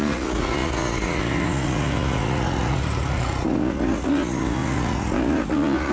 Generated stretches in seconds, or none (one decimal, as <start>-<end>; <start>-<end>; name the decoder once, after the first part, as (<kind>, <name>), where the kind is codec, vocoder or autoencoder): 0.0-5.9 (vocoder, Vocos)